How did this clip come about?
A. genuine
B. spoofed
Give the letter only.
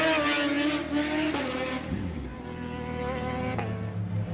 A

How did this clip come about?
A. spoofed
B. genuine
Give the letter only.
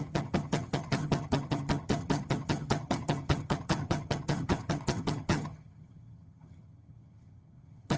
A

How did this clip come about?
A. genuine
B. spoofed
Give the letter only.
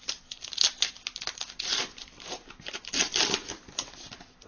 A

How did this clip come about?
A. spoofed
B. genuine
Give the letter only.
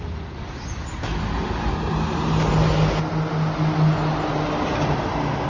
B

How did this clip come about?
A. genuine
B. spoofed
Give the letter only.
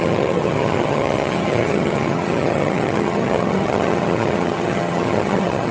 B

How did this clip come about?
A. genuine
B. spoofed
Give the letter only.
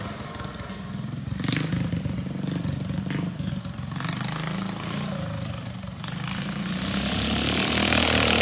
A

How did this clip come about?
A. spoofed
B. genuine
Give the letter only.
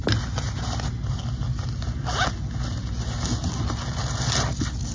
B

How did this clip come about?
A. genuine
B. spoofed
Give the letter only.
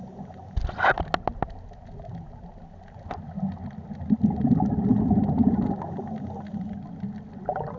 A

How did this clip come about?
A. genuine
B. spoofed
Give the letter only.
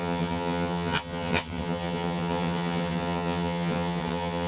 B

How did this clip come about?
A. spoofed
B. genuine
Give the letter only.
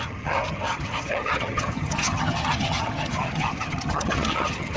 A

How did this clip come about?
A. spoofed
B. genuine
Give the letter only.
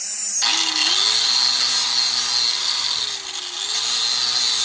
B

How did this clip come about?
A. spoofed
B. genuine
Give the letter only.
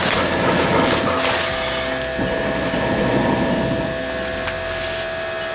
B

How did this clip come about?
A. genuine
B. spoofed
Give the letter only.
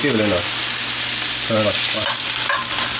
A